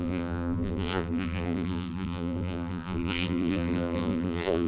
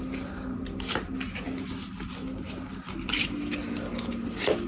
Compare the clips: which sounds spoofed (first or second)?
first